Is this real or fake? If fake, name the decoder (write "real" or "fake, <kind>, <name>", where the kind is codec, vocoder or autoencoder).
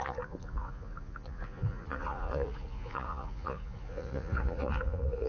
fake, vocoder, Vocos